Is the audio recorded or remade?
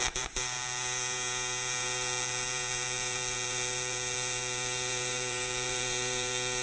remade